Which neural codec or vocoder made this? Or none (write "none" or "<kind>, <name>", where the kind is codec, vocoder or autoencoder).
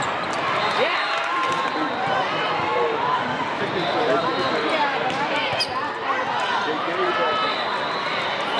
vocoder, BigVGAN v2